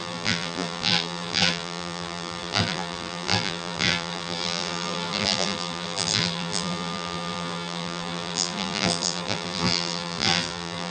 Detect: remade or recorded remade